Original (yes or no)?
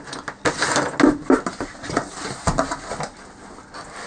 yes